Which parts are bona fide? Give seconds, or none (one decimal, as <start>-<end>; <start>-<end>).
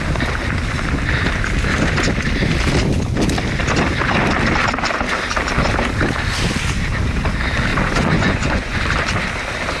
0.0-7.7; 8.8-9.8